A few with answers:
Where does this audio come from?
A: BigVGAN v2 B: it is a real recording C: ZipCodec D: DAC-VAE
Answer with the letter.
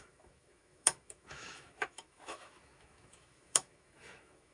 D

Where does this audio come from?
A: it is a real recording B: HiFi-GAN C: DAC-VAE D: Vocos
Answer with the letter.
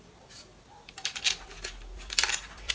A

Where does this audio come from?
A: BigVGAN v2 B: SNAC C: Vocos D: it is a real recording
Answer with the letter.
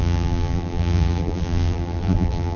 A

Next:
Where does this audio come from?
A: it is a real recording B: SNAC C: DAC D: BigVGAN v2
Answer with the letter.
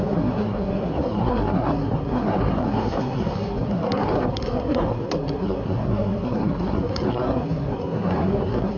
B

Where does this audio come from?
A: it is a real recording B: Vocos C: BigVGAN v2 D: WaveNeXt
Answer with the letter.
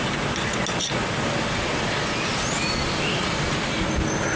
A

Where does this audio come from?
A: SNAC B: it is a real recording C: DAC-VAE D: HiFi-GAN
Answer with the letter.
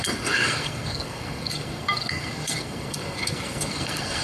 A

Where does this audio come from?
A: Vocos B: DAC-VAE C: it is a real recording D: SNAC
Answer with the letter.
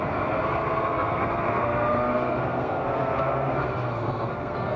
D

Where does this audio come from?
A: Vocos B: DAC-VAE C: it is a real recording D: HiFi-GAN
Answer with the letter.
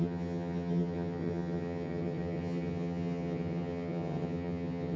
D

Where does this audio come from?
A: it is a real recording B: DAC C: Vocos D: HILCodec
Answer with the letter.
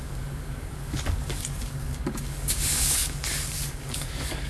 B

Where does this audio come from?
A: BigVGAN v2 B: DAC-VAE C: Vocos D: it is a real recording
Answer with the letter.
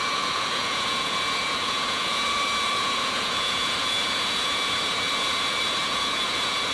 C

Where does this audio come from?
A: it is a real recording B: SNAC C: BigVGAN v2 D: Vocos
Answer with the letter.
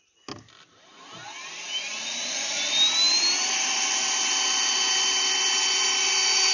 A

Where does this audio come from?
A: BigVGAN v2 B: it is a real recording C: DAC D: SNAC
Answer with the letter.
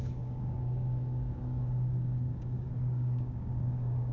C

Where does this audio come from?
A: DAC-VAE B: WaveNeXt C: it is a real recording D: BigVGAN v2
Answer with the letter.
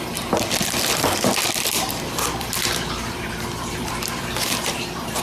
D